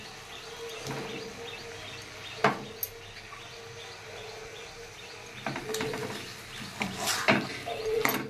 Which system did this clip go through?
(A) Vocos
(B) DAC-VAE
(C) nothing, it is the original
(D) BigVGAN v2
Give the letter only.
C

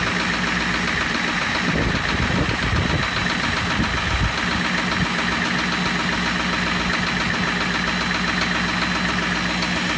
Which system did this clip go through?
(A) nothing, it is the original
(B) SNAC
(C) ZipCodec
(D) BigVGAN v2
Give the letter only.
A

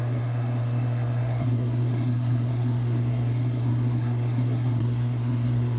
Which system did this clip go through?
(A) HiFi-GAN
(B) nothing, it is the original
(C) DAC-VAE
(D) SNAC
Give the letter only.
D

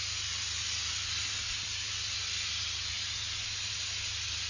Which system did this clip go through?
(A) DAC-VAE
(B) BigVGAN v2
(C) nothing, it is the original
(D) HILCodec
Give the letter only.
C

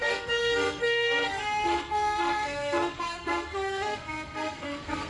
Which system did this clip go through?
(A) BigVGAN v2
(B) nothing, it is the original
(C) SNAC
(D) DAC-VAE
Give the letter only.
C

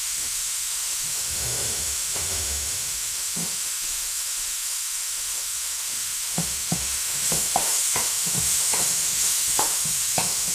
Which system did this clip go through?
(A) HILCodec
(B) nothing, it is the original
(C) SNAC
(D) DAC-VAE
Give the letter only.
D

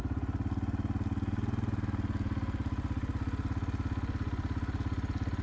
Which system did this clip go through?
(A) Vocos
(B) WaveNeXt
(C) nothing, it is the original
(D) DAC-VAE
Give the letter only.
C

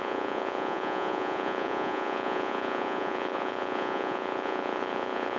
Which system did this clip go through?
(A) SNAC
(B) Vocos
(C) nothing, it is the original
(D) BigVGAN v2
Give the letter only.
B